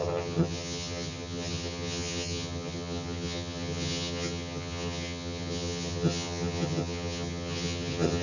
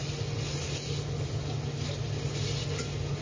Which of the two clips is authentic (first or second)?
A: second